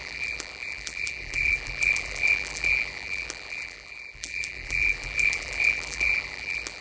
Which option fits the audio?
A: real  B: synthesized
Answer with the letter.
B